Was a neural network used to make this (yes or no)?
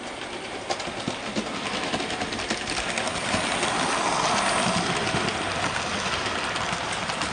no